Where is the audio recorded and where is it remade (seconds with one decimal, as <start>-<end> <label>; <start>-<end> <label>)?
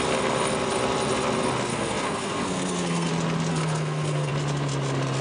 0.0-1.7 recorded; 1.7-3.1 remade; 3.1-3.5 recorded; 3.5-4.3 remade; 4.3-5.2 recorded